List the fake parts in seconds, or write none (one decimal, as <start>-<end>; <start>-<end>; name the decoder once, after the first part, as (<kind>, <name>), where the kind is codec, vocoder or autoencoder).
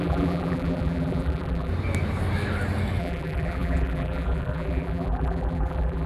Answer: 0.0-1.7 (vocoder, BigVGAN v2); 3.0-6.1